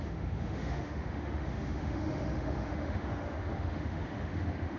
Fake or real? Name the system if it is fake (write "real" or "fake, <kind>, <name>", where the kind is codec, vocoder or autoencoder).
fake, autoencoder, DAC-VAE